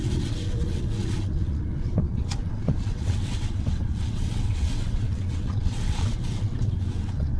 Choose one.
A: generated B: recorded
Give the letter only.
A